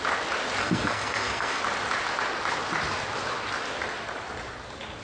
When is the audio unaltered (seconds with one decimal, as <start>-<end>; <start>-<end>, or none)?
0.0-0.6; 1.6-5.0